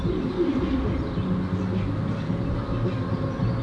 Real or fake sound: real